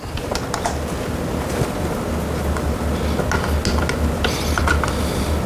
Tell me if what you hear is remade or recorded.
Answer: recorded